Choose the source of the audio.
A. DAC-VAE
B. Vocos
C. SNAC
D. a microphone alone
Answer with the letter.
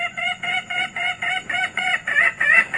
B